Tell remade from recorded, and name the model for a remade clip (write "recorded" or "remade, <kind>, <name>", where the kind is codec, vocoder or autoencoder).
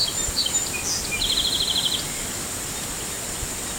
recorded